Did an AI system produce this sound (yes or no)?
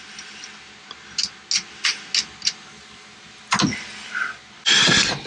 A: no